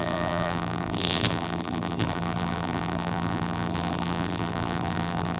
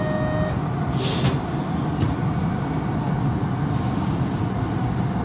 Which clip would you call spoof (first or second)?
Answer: first